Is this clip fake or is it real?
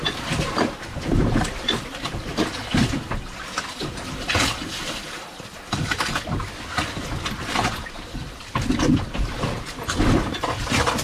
real